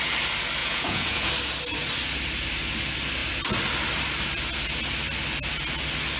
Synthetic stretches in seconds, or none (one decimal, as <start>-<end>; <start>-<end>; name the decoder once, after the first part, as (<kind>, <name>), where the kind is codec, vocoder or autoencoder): 0.6-1.3 (vocoder, Vocos)